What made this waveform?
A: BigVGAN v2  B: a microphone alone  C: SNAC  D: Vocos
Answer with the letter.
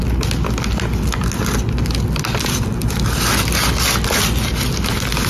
B